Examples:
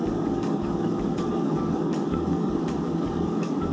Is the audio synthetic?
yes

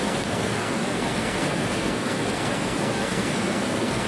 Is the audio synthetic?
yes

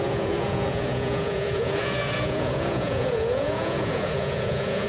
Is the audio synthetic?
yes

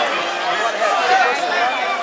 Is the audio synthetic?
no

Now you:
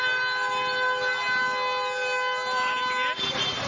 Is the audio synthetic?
no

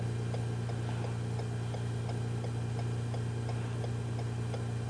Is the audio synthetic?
no